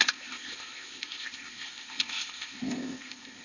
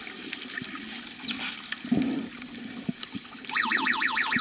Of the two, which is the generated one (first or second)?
first